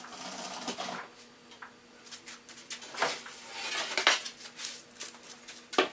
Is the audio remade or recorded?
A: recorded